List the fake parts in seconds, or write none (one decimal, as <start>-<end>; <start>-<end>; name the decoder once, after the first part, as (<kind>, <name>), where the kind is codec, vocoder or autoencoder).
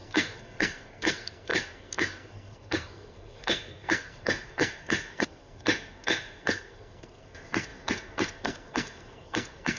0.0-9.8 (codec, SNAC)